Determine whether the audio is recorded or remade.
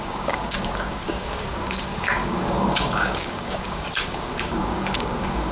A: remade